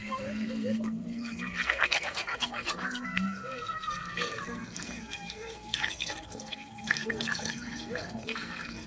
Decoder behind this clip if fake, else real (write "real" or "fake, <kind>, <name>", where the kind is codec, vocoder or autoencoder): fake, codec, SNAC